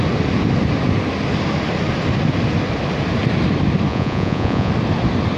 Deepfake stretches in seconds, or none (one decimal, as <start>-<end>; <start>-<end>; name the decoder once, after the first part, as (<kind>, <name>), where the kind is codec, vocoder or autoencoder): 3.9-4.7 (vocoder, Vocos)